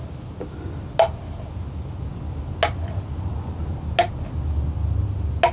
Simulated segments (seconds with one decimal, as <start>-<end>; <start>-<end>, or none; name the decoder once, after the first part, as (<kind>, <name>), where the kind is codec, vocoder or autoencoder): none